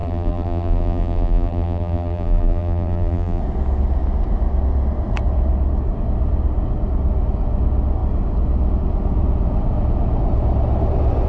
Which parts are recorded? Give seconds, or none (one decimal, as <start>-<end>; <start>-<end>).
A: 3.4-11.3